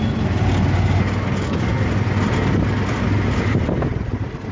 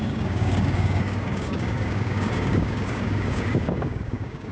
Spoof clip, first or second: second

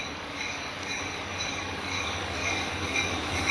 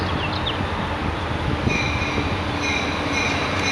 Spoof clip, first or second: first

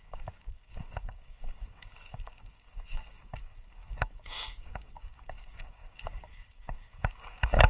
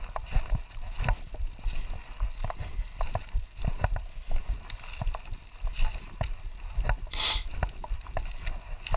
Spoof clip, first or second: first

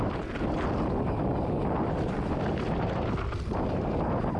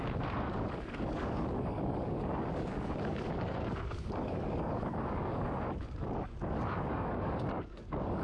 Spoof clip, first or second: second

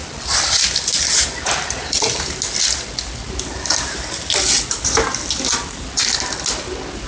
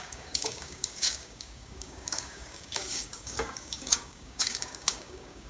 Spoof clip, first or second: second